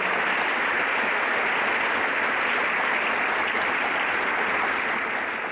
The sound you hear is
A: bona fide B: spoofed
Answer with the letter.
A